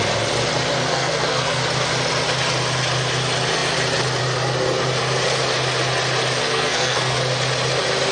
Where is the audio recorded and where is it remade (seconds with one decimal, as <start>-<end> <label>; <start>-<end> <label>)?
0.0-0.8 recorded; 0.8-1.6 remade; 1.6-6.4 recorded; 6.4-7.2 remade; 7.2-8.1 recorded